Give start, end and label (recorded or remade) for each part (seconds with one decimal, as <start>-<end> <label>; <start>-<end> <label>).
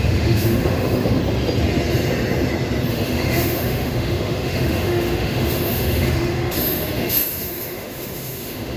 0.0-1.2 remade; 1.2-2.9 recorded; 2.9-8.8 remade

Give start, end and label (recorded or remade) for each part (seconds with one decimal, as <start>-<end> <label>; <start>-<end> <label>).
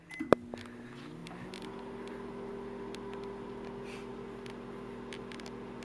0.0-5.8 recorded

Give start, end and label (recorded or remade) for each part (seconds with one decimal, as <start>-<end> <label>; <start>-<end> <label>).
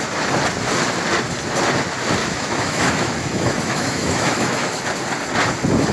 0.0-2.2 recorded; 2.2-4.8 remade; 4.8-5.9 recorded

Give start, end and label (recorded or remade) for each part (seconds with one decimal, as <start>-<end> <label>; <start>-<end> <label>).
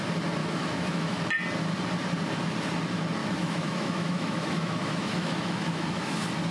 0.0-0.4 recorded; 0.4-1.2 remade; 1.2-3.2 recorded; 3.2-6.1 remade; 6.1-6.5 recorded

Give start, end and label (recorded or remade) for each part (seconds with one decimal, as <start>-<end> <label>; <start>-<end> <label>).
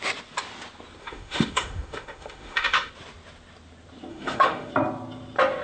0.0-1.0 recorded; 1.0-2.9 remade; 2.9-4.1 recorded; 4.1-4.7 remade; 4.7-5.6 recorded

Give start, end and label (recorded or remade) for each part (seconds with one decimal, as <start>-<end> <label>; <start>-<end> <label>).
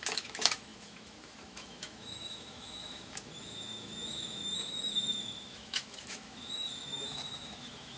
0.0-8.0 remade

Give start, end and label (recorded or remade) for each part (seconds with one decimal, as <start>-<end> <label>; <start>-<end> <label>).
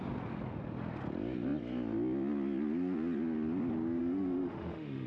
0.0-4.0 recorded; 4.0-5.1 remade